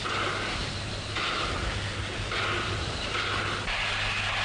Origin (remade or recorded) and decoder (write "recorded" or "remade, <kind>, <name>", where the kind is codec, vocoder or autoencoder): recorded